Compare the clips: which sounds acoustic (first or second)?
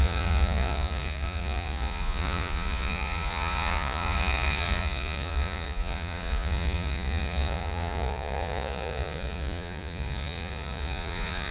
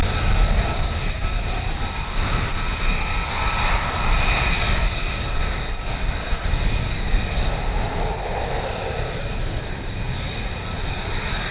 second